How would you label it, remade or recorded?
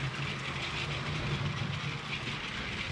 recorded